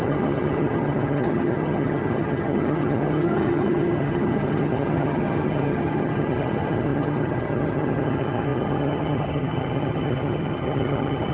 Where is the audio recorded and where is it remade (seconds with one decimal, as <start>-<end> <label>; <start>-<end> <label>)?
0.0-11.3 remade